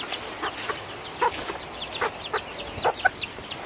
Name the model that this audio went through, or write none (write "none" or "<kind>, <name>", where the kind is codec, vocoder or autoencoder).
none